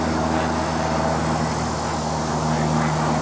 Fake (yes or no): no